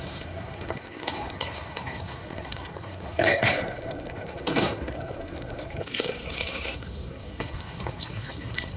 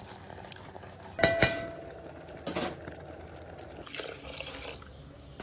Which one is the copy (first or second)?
first